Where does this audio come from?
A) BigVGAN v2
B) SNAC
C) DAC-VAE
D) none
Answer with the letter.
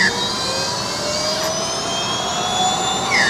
D